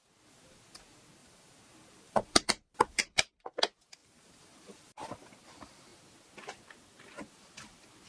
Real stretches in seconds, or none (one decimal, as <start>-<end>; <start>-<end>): 0.0-1.2; 3.6-4.0; 5.3-8.1